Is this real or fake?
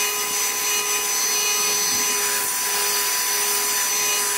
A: real